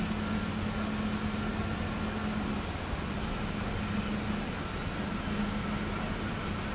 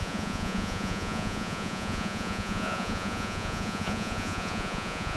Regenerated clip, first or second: second